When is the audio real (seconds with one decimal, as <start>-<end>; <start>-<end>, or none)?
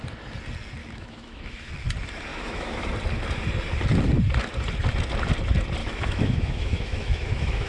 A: 0.0-0.8; 1.7-2.3; 2.9-5.8